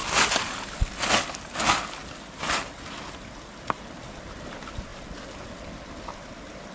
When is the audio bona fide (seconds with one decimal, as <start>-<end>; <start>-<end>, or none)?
0.0-6.7